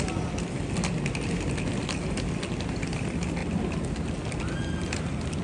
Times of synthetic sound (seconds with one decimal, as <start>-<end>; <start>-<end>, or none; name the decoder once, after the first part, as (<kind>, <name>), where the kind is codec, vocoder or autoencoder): none